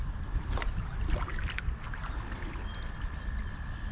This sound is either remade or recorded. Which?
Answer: recorded